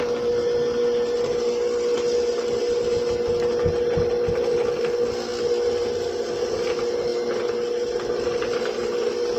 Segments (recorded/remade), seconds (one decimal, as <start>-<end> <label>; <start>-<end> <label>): 0.0-9.4 recorded